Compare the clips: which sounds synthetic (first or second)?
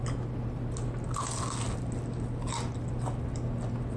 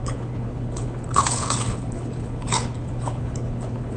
second